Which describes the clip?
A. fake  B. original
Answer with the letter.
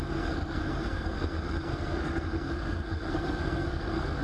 A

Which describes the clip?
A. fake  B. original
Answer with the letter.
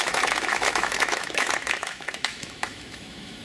A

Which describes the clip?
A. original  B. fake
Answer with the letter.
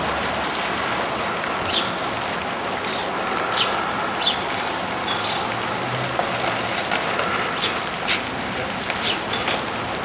A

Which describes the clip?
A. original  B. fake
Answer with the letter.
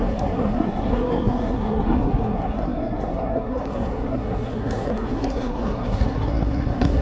B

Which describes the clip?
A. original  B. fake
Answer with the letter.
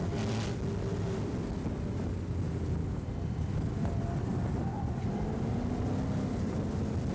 A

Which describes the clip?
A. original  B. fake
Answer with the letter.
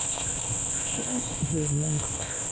B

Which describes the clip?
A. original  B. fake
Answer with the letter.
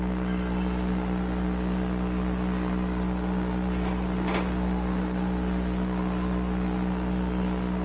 A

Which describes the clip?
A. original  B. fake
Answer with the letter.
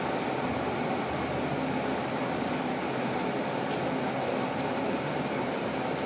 A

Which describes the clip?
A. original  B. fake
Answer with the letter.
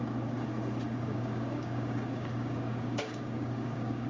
B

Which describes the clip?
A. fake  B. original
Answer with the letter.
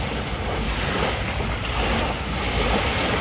B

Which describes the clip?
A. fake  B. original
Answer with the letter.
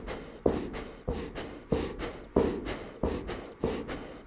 B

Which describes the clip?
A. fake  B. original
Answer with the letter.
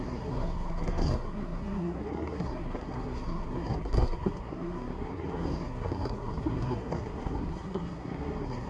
A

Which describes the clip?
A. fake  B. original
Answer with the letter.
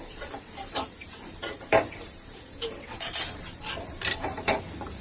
A